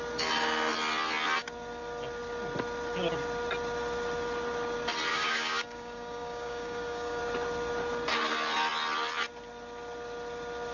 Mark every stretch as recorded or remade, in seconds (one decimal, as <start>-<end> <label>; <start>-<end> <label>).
0.0-5.1 recorded; 5.1-7.2 remade; 7.2-10.7 recorded

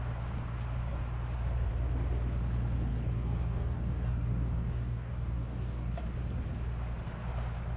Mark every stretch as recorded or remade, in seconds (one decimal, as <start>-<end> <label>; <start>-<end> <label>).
0.0-2.9 recorded; 2.9-6.0 remade; 6.0-7.8 recorded

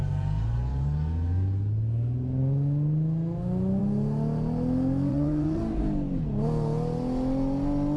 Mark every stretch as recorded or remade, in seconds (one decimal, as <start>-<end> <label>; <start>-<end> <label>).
0.0-5.1 recorded; 5.1-5.6 remade; 5.6-8.0 recorded

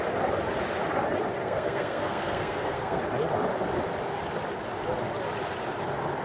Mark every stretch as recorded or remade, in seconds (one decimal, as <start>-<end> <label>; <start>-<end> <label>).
0.0-1.4 recorded; 1.4-3.0 remade; 3.0-6.2 recorded

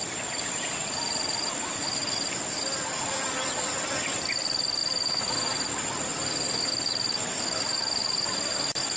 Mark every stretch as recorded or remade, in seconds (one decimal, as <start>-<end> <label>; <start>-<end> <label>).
0.0-9.0 recorded

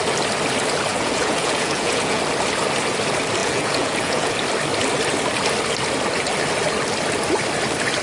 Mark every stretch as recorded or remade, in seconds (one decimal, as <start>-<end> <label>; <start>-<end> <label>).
0.0-0.9 recorded; 0.9-2.2 remade; 2.2-3.4 recorded; 3.4-4.3 remade; 4.3-8.0 recorded

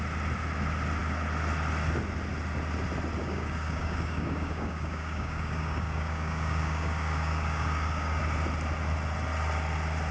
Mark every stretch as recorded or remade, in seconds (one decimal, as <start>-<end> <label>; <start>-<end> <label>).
0.0-3.2 recorded; 3.2-8.2 remade; 8.2-10.1 recorded

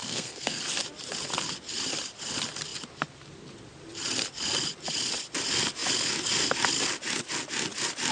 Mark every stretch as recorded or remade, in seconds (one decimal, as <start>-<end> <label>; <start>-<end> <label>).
0.0-0.6 remade; 0.6-8.1 recorded